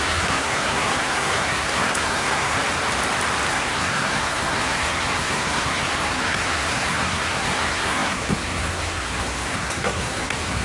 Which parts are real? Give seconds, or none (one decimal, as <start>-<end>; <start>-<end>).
2.6-3.5